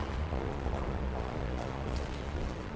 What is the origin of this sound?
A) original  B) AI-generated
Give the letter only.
B